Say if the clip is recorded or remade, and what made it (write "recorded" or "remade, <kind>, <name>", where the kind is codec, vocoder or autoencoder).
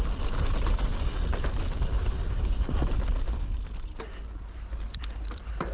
recorded